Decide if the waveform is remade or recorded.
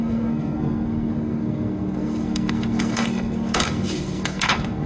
remade